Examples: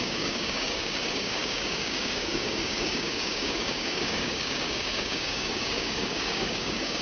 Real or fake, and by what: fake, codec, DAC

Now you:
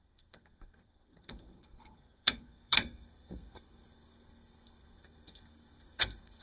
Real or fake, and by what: fake, codec, SNAC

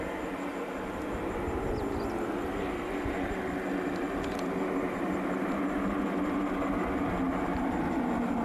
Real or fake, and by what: real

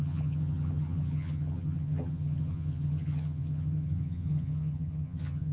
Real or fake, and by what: fake, vocoder, HiFi-GAN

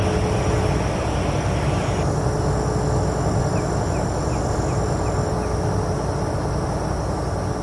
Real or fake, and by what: real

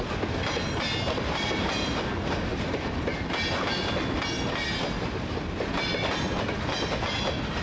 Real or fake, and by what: real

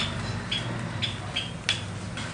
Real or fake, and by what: real